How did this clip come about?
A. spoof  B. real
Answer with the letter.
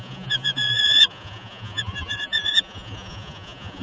A